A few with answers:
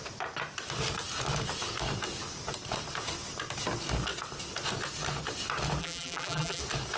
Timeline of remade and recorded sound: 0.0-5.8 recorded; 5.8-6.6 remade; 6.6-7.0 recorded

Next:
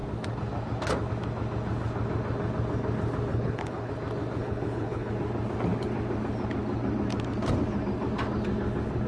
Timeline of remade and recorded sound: 0.0-3.3 recorded; 3.3-3.9 remade; 3.9-4.4 recorded; 4.4-5.1 remade; 5.1-9.1 recorded

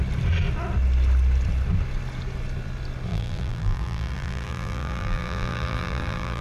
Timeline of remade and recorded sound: 0.0-3.1 recorded; 3.1-6.4 remade